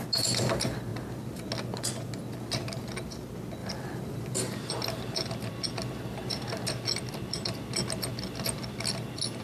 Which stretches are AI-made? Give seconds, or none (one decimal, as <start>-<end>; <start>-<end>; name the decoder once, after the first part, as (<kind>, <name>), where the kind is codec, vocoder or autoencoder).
3.6-4.7 (vocoder, BigVGAN v2)